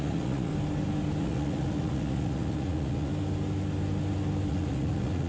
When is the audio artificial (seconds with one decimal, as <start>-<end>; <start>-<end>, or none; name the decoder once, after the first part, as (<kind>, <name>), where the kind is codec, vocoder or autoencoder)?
0.0-0.5 (vocoder, Vocos); 1.2-3.1; 4.5-5.3